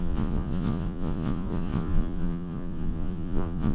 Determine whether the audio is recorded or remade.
remade